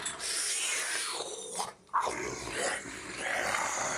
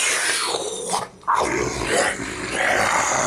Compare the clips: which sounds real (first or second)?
second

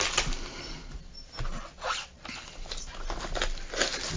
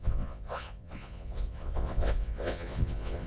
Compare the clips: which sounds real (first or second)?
first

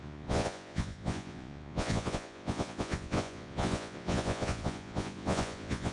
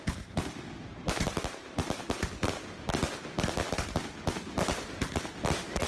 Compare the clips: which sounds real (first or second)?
second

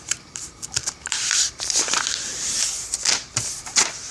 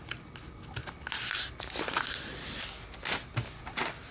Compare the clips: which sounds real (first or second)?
second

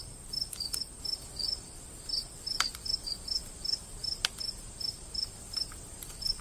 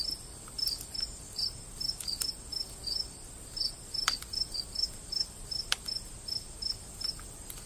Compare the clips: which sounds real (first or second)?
second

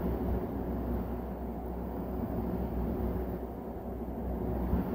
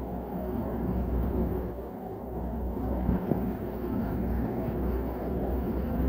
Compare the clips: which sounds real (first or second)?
first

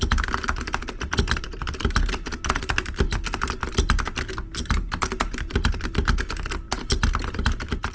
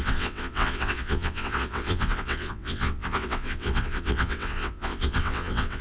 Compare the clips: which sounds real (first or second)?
first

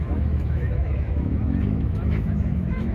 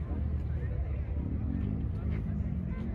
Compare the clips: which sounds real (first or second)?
second